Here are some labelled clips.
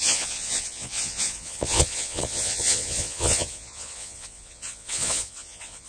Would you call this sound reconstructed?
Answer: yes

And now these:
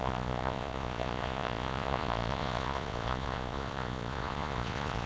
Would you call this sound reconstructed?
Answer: yes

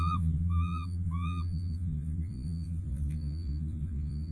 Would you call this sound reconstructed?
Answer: yes